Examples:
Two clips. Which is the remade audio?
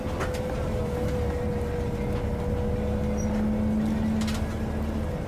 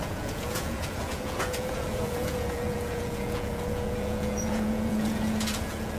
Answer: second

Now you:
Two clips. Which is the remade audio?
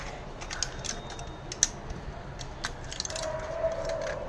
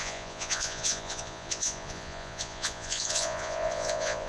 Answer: second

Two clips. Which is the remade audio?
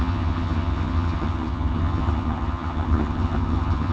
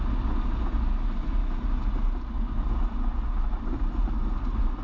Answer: first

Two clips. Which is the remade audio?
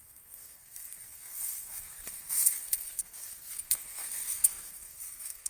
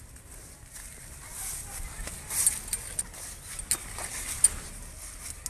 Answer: first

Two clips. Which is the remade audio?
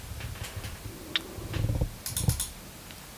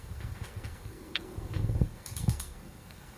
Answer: second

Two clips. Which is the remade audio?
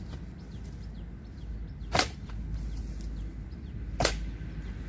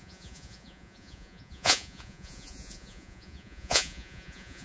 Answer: second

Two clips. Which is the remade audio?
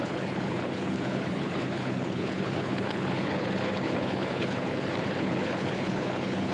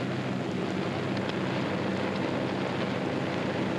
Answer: first